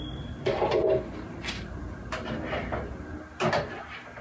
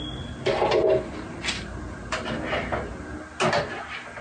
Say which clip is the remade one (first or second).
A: first